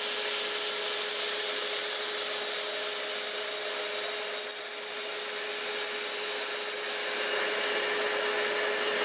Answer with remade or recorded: recorded